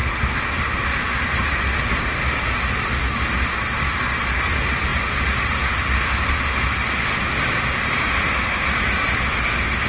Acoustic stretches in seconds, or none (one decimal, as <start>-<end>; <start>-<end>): 0.0-9.9